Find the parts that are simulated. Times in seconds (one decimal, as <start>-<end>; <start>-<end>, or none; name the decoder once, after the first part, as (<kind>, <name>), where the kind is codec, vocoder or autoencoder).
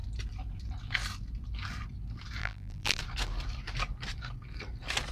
2.4-3.0 (vocoder, BigVGAN v2)